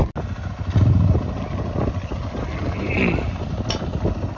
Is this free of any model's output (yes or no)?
yes